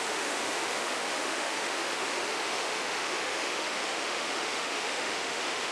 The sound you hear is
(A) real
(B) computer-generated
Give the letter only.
B